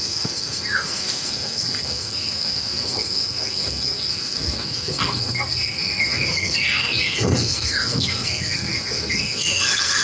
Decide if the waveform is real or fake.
fake